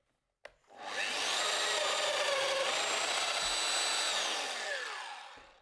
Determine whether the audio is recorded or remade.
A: recorded